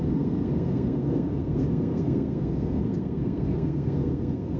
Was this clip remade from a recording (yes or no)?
yes